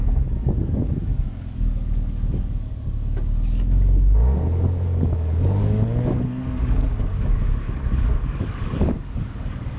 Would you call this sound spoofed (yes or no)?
yes